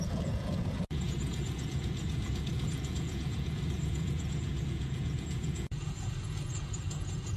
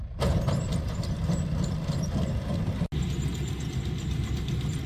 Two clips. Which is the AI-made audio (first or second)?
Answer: first